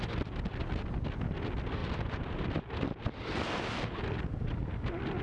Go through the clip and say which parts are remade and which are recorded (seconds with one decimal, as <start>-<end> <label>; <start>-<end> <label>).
0.0-1.8 recorded; 1.8-5.2 remade